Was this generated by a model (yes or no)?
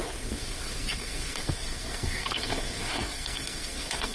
yes